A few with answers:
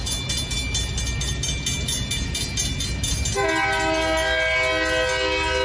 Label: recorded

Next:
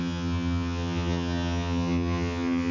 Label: remade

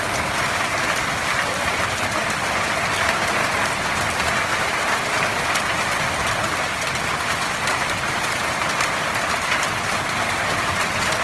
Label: recorded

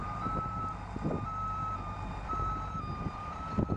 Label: remade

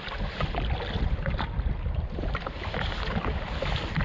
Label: recorded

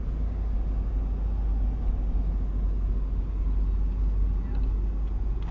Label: recorded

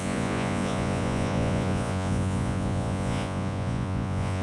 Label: remade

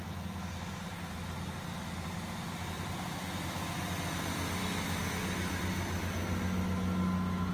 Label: recorded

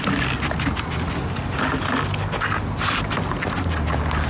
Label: recorded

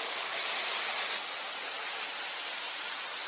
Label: recorded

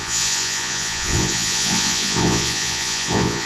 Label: remade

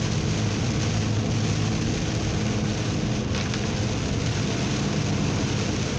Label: recorded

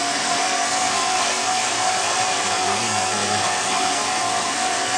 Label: remade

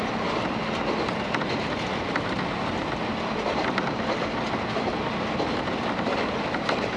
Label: recorded